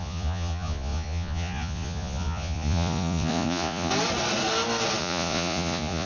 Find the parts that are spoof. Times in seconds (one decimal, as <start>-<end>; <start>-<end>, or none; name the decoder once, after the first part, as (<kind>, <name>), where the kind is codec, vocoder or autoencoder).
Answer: 0.0-3.9 (vocoder, Vocos); 5.0-6.1